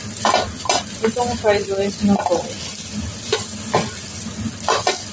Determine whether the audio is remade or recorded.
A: recorded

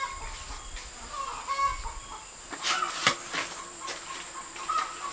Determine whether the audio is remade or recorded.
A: recorded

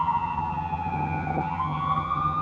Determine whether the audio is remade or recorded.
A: remade